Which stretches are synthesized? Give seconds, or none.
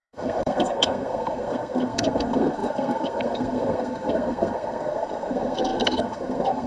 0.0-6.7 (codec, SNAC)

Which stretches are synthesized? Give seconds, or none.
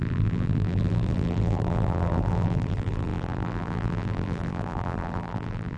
0.0-5.8 (vocoder, BigVGAN v2)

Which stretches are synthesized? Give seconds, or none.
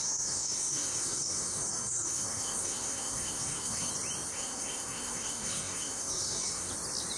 0.0-3.9 (codec, SNAC); 4.3-6.7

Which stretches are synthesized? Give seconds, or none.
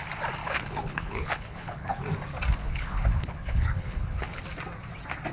0.4-2.0 (codec, HILCodec); 2.6-4.4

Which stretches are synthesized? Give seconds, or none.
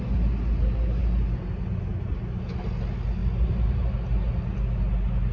none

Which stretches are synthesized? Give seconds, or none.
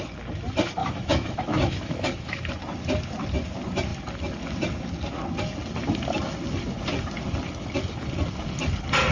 0.8-2.5 (autoencoder, DAC-VAE)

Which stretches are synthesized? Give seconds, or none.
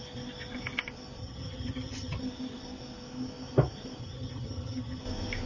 1.2-2.2 (vocoder, HiFi-GAN); 4.0-5.0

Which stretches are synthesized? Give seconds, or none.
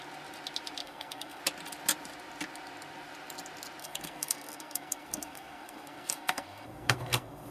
0.8-1.4 (codec, SNAC); 3.8-7.5